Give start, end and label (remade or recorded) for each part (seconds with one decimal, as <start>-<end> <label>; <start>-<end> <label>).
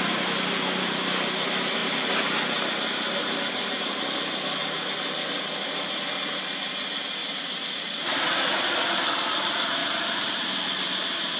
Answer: 0.0-7.2 recorded; 7.2-8.4 remade; 8.4-9.8 recorded; 9.8-10.4 remade; 10.4-11.4 recorded